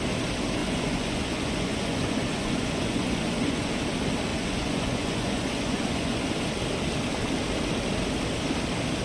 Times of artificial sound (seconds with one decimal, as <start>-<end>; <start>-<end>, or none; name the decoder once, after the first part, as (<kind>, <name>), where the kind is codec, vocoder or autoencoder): 0.6-3.7 (vocoder, Vocos); 4.3-6.2